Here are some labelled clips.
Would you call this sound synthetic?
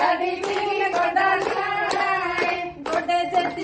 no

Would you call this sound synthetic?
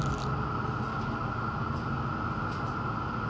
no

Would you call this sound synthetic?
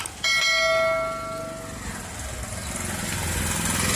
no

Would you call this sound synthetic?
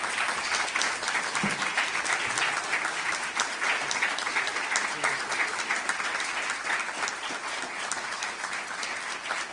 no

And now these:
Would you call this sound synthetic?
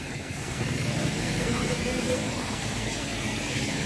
yes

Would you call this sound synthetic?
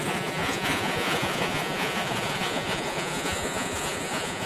yes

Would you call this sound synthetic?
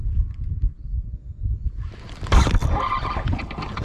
no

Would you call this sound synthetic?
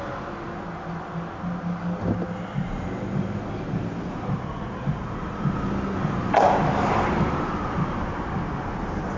no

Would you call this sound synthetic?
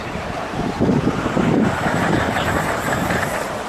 yes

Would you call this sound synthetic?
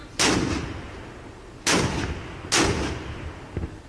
no